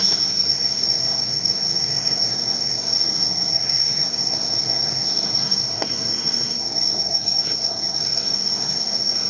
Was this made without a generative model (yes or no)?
no